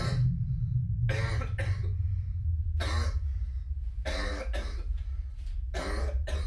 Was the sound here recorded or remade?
recorded